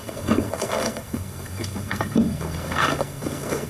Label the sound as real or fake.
fake